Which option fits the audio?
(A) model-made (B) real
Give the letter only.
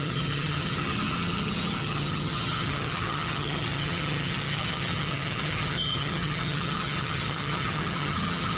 A